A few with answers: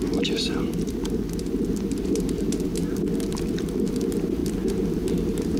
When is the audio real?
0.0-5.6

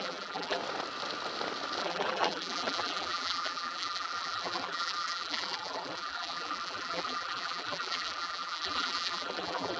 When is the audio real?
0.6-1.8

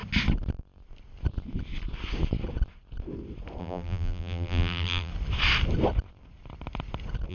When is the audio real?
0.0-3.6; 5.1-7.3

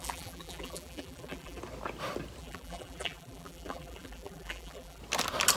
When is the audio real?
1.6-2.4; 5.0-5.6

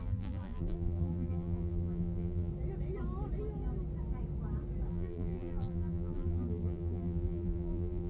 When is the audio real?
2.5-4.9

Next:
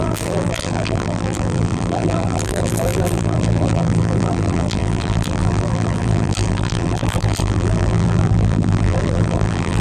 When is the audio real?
none